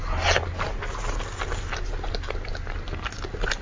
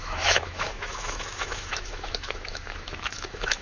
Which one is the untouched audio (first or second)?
first